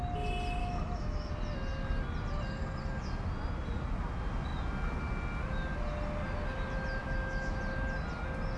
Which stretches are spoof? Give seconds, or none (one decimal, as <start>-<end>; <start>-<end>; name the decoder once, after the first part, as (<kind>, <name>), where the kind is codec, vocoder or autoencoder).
0.6-1.3 (autoencoder, DAC-VAE); 7.0-7.6